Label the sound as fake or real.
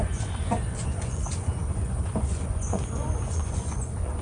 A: fake